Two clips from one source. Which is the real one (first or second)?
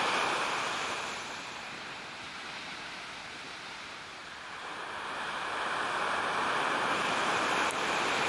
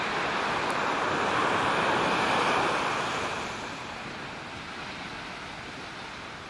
second